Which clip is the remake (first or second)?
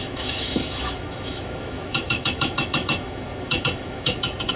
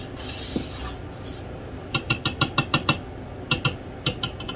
first